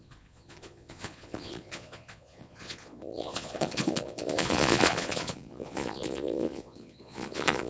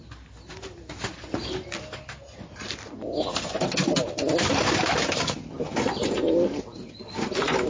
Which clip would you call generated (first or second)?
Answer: first